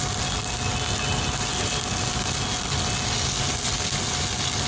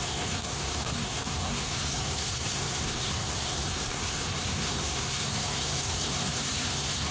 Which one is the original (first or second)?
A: first